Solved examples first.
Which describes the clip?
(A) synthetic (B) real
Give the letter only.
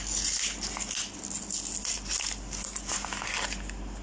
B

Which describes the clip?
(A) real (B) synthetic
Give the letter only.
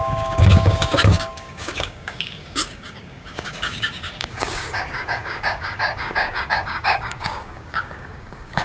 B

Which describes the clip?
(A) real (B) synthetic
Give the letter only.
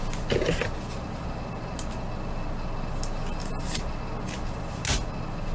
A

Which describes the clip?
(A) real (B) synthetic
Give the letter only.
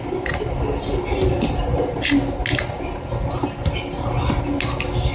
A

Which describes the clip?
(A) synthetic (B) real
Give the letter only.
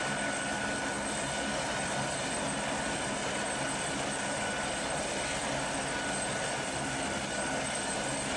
B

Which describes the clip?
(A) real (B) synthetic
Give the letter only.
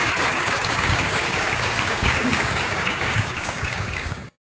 B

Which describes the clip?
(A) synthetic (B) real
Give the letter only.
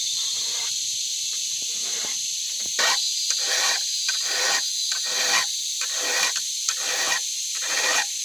B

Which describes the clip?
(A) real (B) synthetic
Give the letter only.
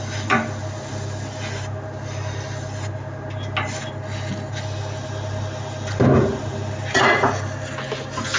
A